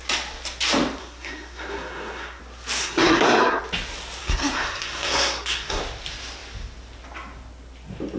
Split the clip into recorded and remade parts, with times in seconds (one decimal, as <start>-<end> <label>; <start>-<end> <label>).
0.0-1.0 recorded; 1.0-2.4 remade; 2.4-2.8 recorded; 2.8-3.6 remade; 3.6-4.2 recorded; 4.2-5.8 remade; 5.8-8.2 recorded